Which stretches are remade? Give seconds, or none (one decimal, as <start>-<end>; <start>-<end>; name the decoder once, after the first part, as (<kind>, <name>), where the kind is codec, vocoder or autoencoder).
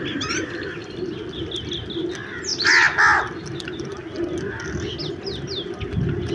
none